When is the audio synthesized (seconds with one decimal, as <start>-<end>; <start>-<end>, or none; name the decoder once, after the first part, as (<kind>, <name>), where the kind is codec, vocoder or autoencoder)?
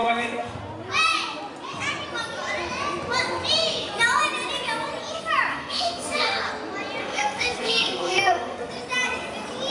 0.0-0.6 (codec, SNAC); 5.5-6.5; 7.0-8.7